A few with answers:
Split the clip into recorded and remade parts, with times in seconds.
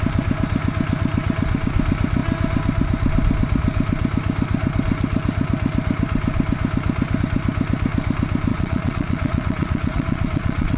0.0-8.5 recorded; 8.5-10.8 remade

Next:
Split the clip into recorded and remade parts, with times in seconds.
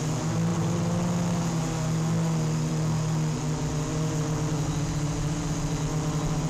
0.0-6.5 recorded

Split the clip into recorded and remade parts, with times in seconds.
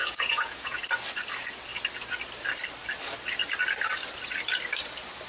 0.0-0.8 remade; 0.8-5.3 recorded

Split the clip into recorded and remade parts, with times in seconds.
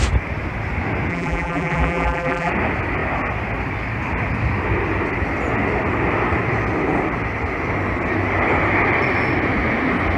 0.0-1.1 recorded; 1.1-2.5 remade; 2.5-10.2 recorded